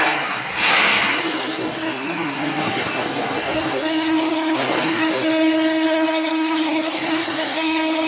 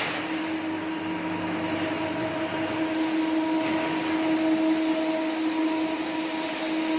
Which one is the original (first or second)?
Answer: second